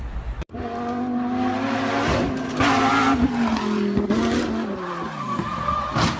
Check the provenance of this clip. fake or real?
real